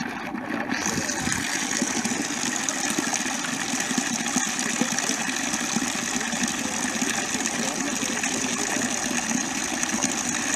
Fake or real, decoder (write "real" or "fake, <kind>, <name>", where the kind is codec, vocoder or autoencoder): real